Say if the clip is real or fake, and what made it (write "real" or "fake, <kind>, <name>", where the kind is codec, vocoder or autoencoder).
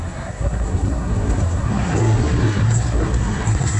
fake, codec, SNAC